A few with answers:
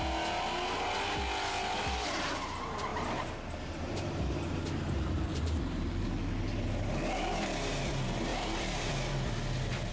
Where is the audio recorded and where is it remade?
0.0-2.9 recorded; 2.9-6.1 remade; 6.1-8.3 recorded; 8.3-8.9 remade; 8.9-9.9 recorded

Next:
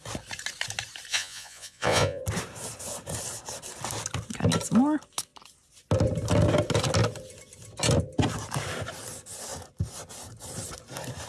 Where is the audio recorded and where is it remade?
0.0-1.1 recorded; 1.1-2.2 remade; 2.2-11.3 recorded